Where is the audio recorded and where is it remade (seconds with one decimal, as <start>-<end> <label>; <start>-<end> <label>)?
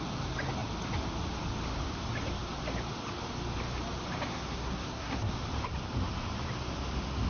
0.0-4.3 recorded; 4.3-5.3 remade; 5.3-7.3 recorded